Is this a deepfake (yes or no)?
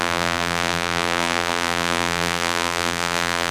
yes